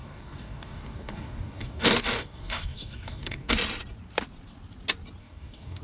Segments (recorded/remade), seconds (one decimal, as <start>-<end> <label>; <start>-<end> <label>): 0.0-3.5 remade; 3.5-5.2 recorded; 5.2-5.8 remade